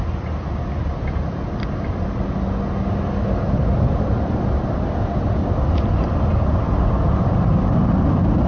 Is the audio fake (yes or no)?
no